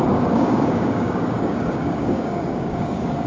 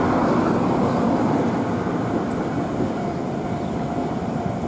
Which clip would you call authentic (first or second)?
second